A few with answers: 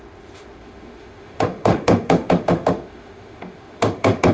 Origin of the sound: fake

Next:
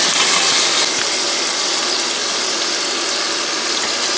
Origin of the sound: real